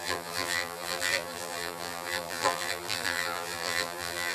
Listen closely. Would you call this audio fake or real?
fake